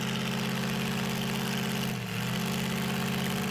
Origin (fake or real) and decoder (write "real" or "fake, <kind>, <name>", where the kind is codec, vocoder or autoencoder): real